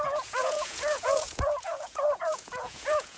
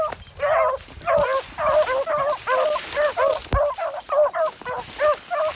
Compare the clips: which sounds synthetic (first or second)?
first